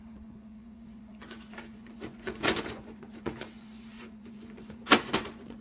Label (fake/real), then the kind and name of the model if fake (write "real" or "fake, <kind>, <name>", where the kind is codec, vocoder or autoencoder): fake, vocoder, Vocos